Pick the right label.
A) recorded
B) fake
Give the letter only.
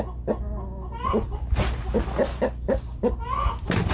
A